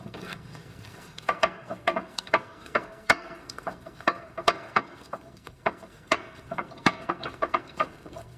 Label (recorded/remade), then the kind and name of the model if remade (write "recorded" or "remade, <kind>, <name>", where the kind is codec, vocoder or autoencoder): remade, codec, SNAC